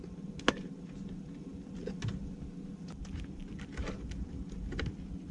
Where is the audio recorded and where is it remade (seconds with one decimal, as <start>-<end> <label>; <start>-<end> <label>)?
0.0-5.3 recorded